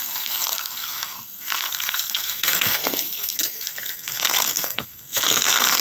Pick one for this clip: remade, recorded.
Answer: remade